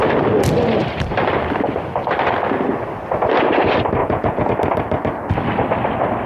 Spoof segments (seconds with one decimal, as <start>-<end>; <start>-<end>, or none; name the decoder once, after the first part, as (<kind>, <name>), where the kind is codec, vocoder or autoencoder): 4.0-4.5 (vocoder, Vocos)

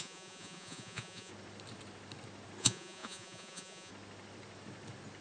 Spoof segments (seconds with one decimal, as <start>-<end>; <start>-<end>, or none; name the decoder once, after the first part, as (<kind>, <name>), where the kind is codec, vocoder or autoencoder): 0.0-1.3 (vocoder, Vocos); 2.6-3.9

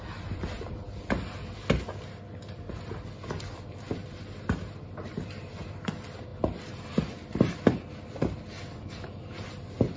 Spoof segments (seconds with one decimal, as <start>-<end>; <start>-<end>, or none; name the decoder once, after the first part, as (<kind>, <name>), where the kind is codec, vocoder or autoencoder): none

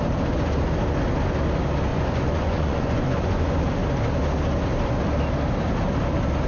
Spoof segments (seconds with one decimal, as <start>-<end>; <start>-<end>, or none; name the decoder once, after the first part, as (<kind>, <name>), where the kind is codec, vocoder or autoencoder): 1.9-3.6 (vocoder, Vocos)

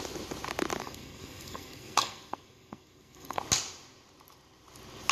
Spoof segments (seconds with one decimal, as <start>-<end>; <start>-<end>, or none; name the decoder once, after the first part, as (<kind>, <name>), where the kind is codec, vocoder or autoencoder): 0.8-3.4 (codec, SNAC)